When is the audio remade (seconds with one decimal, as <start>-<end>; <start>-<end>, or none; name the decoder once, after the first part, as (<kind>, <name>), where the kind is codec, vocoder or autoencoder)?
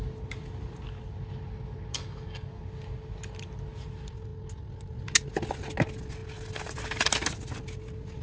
1.9-2.6 (codec, DAC)